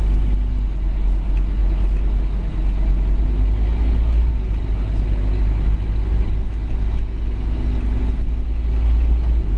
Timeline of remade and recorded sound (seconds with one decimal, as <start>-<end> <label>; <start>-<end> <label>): 0.0-9.6 recorded